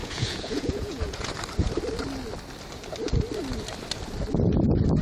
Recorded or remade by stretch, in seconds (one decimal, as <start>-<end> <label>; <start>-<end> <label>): 0.0-1.3 remade; 1.3-5.0 recorded

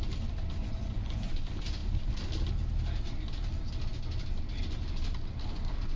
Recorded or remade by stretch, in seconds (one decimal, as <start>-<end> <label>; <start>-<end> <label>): 0.0-0.6 recorded; 0.6-1.3 remade; 1.3-6.0 recorded

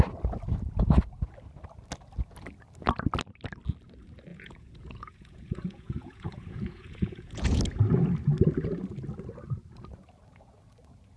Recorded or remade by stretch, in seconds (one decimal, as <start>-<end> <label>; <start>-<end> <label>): 0.0-4.3 recorded; 4.3-7.6 remade; 7.6-11.2 recorded

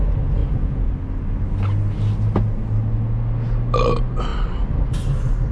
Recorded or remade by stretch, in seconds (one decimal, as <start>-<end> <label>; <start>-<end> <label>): 0.0-0.4 recorded; 0.4-0.9 remade; 0.9-5.5 recorded

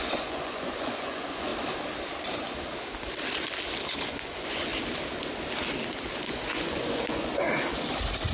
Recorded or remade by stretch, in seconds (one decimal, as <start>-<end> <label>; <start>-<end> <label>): 0.0-1.5 remade; 1.5-4.1 recorded; 4.1-4.7 remade; 4.7-6.2 recorded; 6.2-7.5 remade; 7.5-8.3 recorded

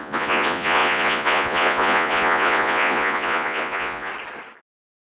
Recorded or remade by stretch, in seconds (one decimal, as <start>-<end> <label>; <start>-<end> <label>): 0.0-4.1 remade; 4.1-4.6 recorded; 4.6-5.0 remade